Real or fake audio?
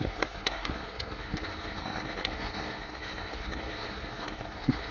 fake